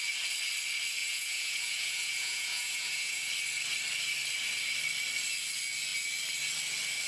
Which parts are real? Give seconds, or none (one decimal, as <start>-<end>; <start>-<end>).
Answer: 0.0-1.0; 3.3-7.1